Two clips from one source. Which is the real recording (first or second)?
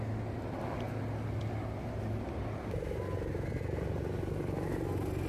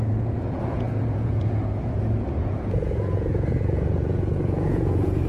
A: first